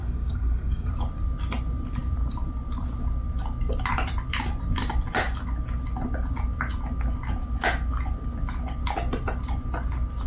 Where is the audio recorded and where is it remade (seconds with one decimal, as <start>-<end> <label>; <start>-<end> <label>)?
0.0-0.9 remade; 0.9-10.3 recorded